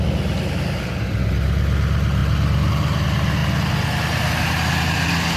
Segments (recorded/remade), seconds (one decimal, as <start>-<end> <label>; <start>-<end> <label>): 0.0-5.4 recorded